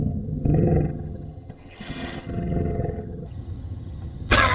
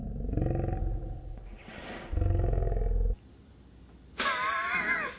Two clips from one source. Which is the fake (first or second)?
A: first